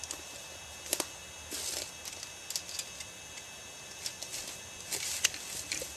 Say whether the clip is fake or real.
real